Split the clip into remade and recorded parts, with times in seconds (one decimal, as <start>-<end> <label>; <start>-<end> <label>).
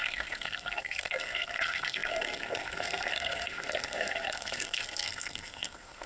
0.0-6.1 remade